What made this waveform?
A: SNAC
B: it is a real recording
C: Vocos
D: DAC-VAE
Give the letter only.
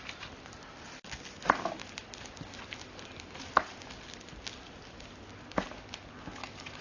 B